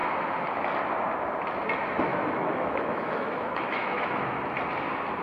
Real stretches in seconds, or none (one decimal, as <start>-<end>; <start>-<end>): 0.0-2.1; 4.2-5.2